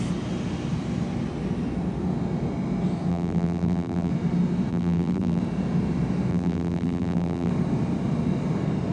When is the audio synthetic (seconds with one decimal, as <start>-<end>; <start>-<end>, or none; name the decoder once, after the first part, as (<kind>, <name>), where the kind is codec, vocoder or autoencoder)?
3.1-4.1 (vocoder, BigVGAN v2); 4.7-5.4; 6.3-7.5